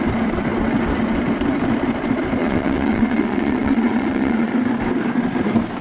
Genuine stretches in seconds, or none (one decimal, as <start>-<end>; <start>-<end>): 0.0-2.4; 4.5-5.8